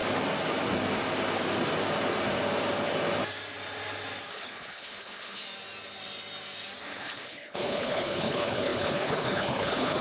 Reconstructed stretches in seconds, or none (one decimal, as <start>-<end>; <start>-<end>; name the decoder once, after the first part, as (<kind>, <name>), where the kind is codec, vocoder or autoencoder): 4.3-5.4 (codec, HILCodec); 6.8-10.0